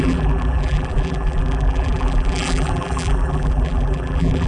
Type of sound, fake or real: fake